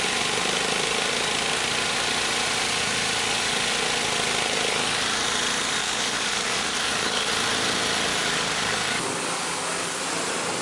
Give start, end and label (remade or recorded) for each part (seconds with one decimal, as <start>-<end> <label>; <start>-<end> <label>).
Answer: 0.0-5.8 recorded; 5.8-7.3 remade; 7.3-8.1 recorded; 8.1-10.0 remade; 10.0-10.6 recorded